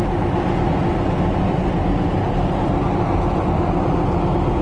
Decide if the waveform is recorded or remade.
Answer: recorded